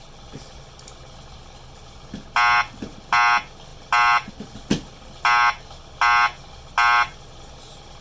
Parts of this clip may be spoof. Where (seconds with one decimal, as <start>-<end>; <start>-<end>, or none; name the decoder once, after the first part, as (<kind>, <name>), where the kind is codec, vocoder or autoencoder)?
none